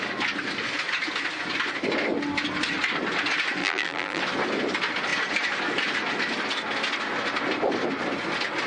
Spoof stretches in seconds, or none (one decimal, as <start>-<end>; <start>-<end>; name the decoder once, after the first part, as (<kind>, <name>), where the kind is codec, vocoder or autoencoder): 3.6-4.2 (vocoder, BigVGAN v2)